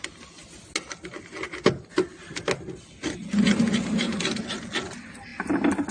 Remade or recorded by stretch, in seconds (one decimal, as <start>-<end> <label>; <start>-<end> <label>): 0.0-5.9 recorded